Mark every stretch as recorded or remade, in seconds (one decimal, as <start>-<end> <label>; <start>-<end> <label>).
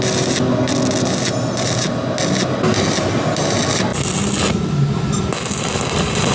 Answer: 0.0-6.3 recorded